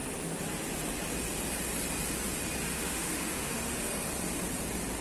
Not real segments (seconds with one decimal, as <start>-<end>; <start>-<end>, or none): 2.7-4.1